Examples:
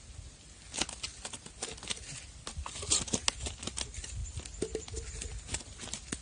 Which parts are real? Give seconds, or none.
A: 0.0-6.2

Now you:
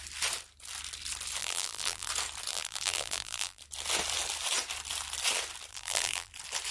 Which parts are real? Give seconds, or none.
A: 0.0-1.4; 2.1-2.5; 3.6-5.7; 6.3-6.7

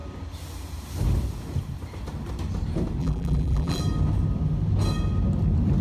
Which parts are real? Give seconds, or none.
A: 0.0-3.0; 3.8-5.8

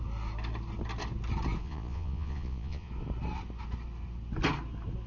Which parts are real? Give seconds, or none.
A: 0.0-1.6; 2.9-5.1

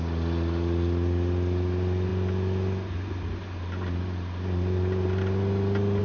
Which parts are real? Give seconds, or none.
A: 0.0-6.0

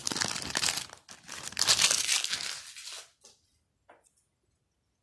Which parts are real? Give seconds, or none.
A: 0.0-5.0

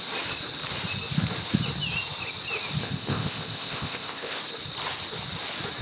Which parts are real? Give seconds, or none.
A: 0.0-2.8; 4.4-5.8